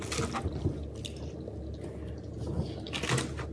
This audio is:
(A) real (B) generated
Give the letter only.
A